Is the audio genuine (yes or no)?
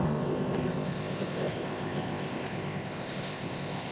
no